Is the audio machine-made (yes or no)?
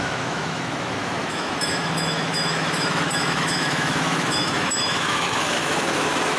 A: yes